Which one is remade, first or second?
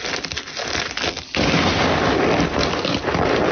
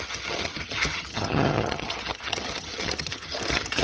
second